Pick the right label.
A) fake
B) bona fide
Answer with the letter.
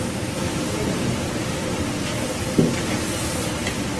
B